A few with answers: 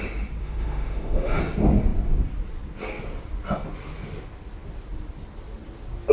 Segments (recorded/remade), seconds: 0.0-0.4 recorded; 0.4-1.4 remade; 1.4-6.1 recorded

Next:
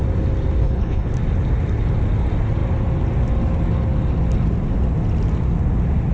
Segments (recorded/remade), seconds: 0.0-0.6 recorded; 0.6-1.1 remade; 1.1-6.1 recorded

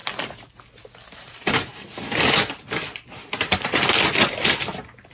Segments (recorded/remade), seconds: 0.0-1.1 recorded; 1.1-1.9 remade; 1.9-4.1 recorded; 4.1-5.1 remade